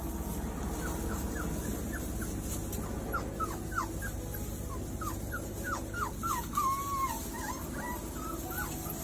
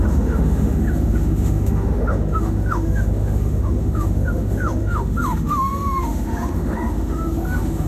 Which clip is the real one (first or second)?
first